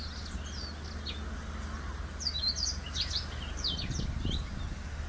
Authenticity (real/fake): real